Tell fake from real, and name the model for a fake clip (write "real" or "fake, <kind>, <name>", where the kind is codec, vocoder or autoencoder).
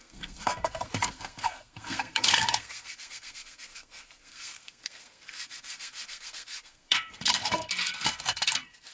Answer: fake, codec, SNAC